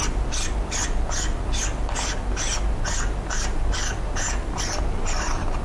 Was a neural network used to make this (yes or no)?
no